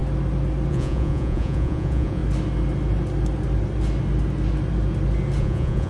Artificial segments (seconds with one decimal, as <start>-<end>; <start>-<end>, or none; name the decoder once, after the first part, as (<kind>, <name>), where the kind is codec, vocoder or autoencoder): 0.7-2.2 (vocoder, Vocos); 5.4-5.9